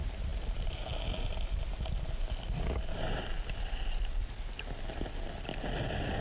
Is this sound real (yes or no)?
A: yes